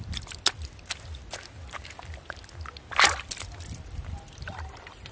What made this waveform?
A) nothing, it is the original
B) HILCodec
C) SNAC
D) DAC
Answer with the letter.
A